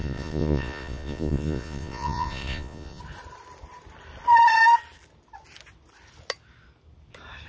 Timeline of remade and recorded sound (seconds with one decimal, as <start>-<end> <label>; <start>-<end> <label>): 0.0-3.0 remade; 3.0-7.5 recorded